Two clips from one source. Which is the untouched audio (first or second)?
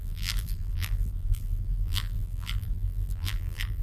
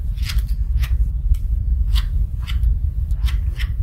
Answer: second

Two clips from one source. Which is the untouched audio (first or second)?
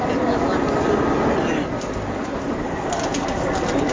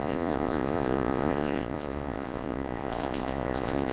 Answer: first